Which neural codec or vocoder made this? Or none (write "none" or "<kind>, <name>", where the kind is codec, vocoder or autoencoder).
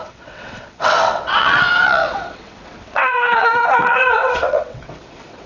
vocoder, WaveNeXt